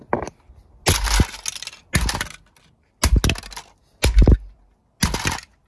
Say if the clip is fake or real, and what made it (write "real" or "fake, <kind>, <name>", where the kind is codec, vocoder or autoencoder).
real